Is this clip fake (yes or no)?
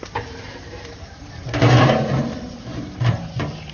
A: yes